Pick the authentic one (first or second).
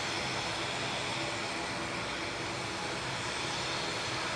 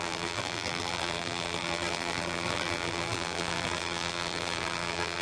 first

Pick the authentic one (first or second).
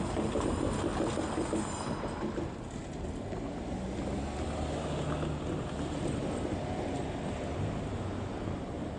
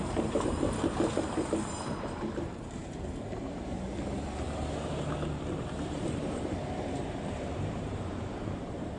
first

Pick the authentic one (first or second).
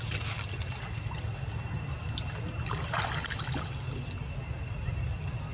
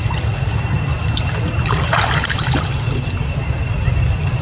first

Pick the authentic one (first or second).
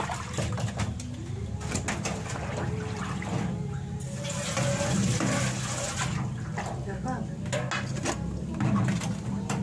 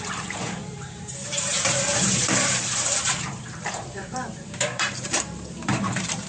first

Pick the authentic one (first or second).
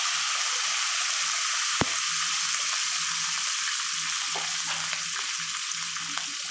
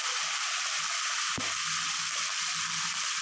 first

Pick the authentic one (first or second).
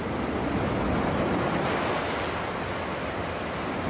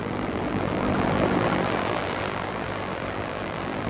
first